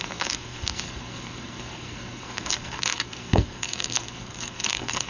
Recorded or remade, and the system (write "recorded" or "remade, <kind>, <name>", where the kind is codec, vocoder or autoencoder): remade, codec, SNAC